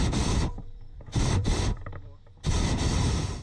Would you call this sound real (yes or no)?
no